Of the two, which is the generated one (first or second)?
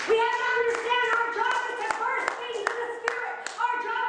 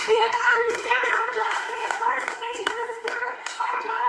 second